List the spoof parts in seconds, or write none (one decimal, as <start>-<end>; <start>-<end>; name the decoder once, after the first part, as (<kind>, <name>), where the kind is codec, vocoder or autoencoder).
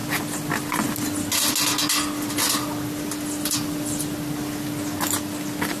none